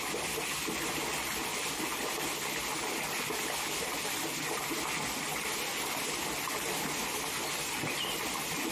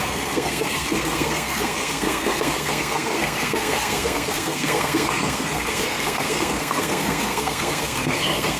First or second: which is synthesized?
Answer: second